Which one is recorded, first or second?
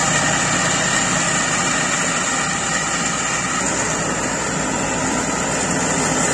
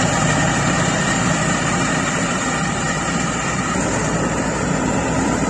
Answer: first